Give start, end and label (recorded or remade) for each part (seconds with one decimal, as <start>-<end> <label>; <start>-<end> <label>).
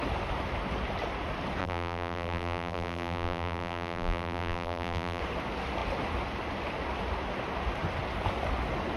0.0-1.6 recorded; 1.6-5.2 remade; 5.2-9.0 recorded